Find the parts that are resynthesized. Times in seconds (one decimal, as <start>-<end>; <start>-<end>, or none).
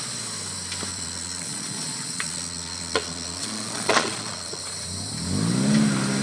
0.9-4.6